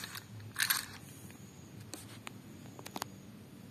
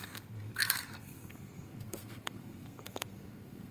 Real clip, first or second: first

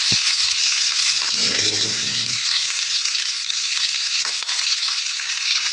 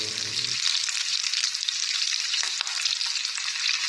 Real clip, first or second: second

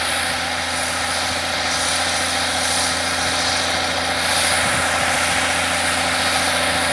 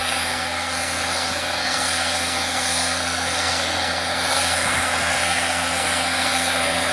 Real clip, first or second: first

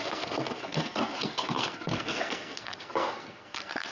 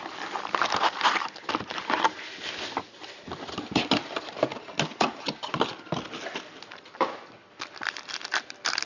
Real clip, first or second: second